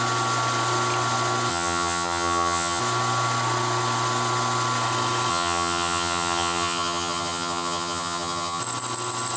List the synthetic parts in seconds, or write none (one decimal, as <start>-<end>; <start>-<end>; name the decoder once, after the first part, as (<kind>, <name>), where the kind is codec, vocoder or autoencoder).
1.5-2.8 (vocoder, HiFi-GAN); 5.3-8.6